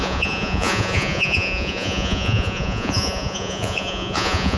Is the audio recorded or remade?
remade